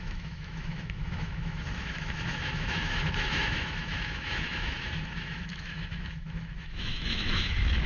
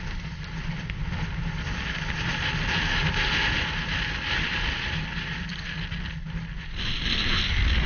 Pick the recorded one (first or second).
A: second